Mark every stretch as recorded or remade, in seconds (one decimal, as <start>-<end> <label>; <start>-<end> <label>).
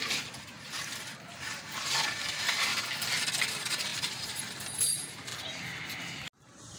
0.0-2.7 remade; 2.7-3.5 recorded; 3.5-5.3 remade; 5.3-6.3 recorded; 6.3-6.8 remade